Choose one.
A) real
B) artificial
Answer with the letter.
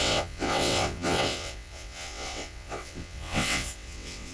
B